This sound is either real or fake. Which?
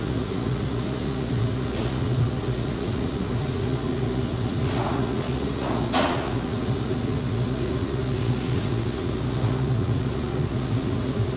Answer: fake